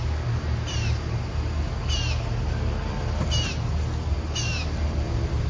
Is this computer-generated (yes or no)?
no